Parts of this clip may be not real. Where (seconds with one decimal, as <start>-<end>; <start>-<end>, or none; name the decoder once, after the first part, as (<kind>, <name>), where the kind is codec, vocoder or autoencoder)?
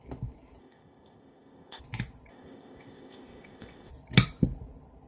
0.6-1.8 (codec, ZipCodec); 2.3-3.9